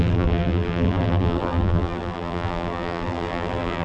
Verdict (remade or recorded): remade